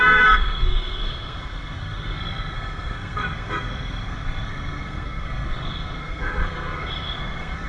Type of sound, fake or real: fake